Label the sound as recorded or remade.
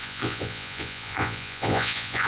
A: remade